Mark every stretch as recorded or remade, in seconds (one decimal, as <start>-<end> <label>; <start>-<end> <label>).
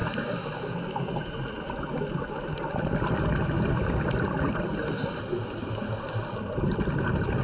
0.0-7.4 recorded